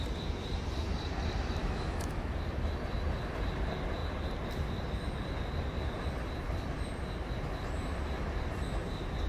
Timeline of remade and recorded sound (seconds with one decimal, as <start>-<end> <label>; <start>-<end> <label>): 0.0-1.6 recorded; 1.6-2.3 remade; 2.3-9.3 recorded